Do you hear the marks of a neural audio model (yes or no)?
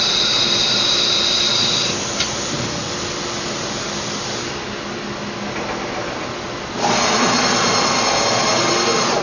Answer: no